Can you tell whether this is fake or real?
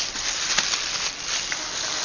real